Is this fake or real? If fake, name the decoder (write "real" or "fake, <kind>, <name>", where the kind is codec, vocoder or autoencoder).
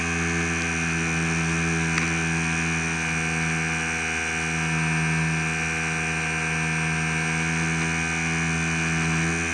real